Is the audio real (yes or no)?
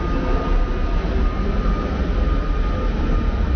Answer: yes